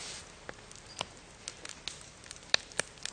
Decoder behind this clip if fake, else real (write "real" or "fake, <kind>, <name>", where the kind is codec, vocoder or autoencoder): real